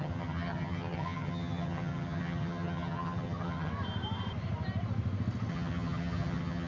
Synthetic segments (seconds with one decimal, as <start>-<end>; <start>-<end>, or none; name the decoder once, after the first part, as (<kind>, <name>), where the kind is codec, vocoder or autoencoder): 0.0-3.7 (vocoder, HiFi-GAN); 5.5-6.7